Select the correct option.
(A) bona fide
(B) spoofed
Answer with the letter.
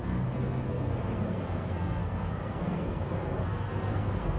B